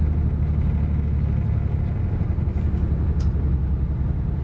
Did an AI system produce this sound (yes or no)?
no